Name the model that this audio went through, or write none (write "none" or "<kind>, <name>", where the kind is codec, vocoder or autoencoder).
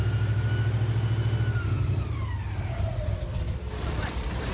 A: none